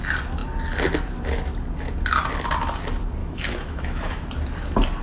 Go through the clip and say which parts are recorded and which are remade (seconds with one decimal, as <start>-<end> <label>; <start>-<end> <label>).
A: 0.0-3.2 recorded; 3.2-4.1 remade; 4.1-5.0 recorded